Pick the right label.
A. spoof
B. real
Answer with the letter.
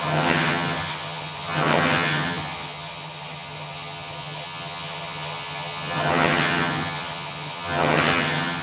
A